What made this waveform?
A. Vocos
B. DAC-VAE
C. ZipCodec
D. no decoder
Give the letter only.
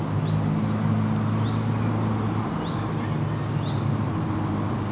D